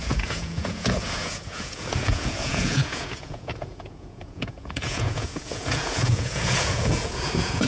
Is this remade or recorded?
remade